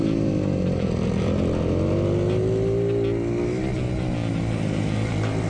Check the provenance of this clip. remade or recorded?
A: recorded